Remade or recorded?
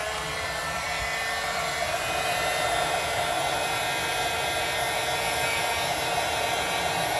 remade